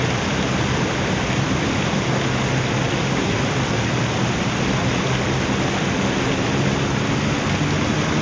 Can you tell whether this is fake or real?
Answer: real